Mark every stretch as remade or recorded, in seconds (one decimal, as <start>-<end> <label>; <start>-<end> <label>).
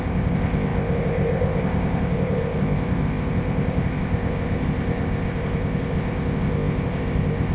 0.0-7.5 remade